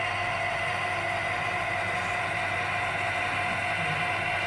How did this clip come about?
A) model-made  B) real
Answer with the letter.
B